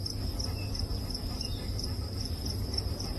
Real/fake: real